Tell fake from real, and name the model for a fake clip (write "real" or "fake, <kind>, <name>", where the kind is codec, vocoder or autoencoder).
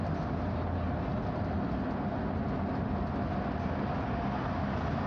real